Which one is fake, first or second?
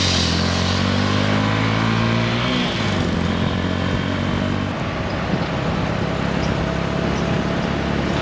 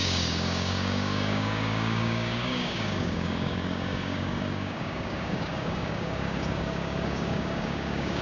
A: second